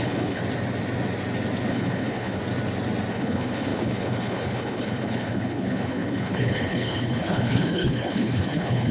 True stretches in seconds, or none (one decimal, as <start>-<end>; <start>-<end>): 0.4-1.7; 2.4-3.1